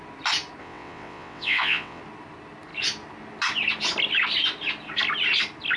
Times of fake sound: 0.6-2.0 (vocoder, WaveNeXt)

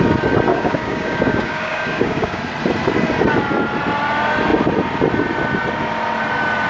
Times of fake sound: 0.5-2.4 (codec, DAC)

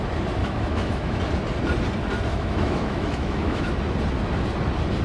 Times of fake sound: 0.4-1.2 (autoencoder, DAC-VAE); 2.3-3.7

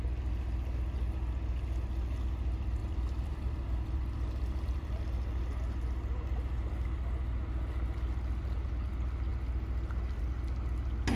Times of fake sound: 2.8-4.9 (vocoder, BigVGAN v2)

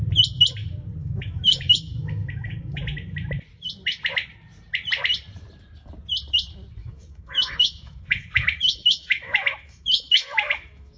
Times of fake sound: 1.0-2.8 (autoencoder, DAC-VAE); 6.8-11.0